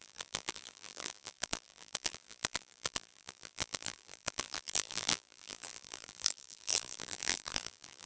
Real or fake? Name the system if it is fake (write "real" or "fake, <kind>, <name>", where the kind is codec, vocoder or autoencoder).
fake, vocoder, BigVGAN v2